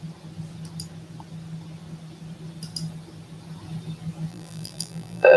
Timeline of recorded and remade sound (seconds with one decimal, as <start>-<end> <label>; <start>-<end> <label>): 0.0-4.3 recorded; 4.3-5.4 remade